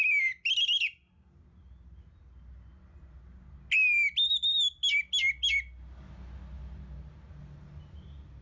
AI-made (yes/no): no